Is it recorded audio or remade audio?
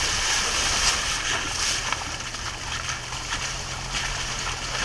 recorded